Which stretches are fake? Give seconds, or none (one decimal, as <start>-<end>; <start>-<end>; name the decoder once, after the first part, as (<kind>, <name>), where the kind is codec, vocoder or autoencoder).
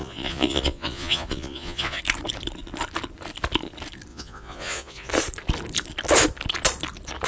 0.0-2.0 (vocoder, Vocos); 4.1-5.1